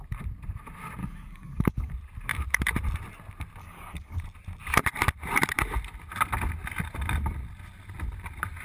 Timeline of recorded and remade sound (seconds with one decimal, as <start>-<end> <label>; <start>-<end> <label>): 0.0-1.0 recorded; 1.0-1.9 remade; 1.9-3.6 recorded; 3.6-4.2 remade; 4.2-8.6 recorded